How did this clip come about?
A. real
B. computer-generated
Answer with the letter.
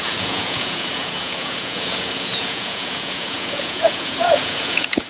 B